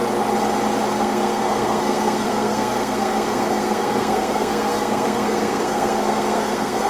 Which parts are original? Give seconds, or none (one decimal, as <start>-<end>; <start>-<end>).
0.0-0.9